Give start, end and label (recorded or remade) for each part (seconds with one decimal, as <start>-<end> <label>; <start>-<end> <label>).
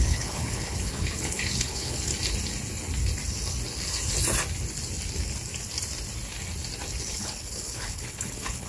0.0-2.1 remade; 2.1-7.1 recorded; 7.1-8.7 remade